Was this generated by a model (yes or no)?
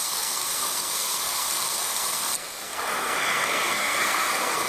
yes